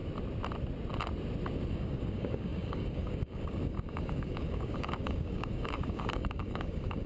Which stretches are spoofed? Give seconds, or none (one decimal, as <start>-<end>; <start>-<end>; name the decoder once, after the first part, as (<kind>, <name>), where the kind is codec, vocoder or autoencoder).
1.7-7.1 (codec, DAC)